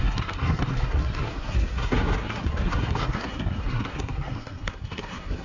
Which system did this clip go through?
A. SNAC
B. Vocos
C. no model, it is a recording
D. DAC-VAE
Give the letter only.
A